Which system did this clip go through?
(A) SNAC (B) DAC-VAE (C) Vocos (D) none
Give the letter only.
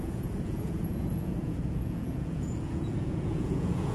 C